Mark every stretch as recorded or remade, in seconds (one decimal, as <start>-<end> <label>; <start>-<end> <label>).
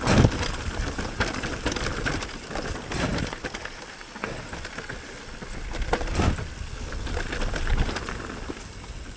0.0-9.2 recorded